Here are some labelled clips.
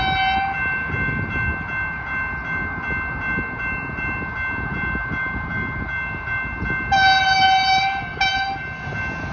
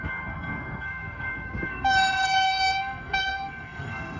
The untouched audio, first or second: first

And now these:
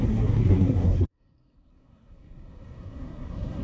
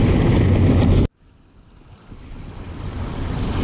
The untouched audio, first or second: second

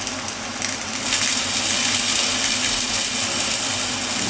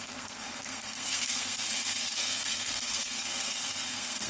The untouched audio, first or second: first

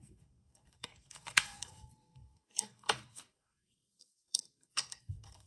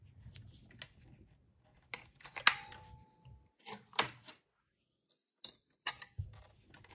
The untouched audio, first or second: second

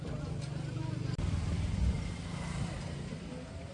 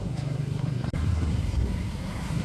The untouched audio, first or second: first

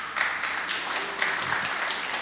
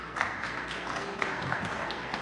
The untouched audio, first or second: first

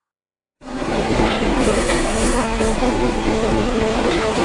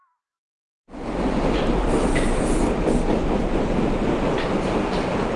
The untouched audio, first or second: second